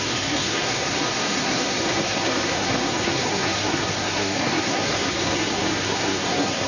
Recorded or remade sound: remade